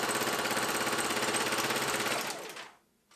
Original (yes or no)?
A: yes